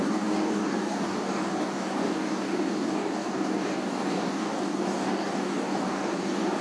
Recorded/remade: remade